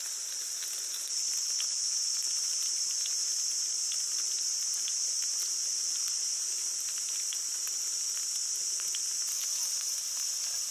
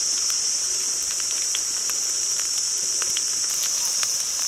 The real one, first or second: first